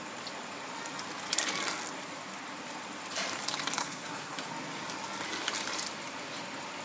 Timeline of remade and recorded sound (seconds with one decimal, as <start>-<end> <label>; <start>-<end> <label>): 0.0-3.8 recorded; 3.8-4.5 remade; 4.5-6.8 recorded